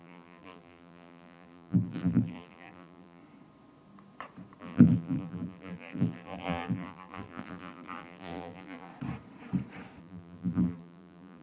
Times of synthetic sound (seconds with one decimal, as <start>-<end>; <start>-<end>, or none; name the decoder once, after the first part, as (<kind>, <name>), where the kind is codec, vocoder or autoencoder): 0.0-3.2 (vocoder, BigVGAN v2); 4.6-8.9; 10.0-11.4